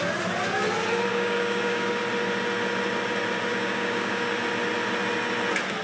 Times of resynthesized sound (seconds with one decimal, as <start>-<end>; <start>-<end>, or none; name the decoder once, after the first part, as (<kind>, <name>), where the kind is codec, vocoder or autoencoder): 1.1-2.0 (codec, DAC); 3.5-4.3